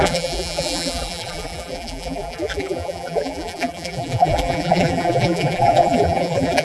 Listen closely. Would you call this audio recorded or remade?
remade